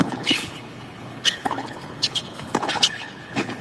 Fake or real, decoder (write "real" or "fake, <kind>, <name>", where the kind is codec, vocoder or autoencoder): fake, codec, HILCodec